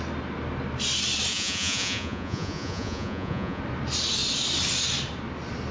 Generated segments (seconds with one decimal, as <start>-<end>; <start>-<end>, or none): 1.3-3.6